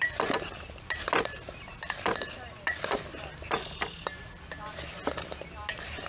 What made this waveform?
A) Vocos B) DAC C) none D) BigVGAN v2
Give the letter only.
C